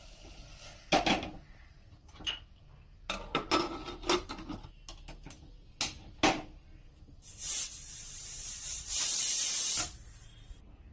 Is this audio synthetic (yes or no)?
no